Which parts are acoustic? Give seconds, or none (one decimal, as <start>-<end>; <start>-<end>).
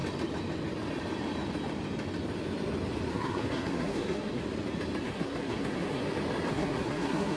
0.0-3.1; 4.4-5.0; 6.0-6.5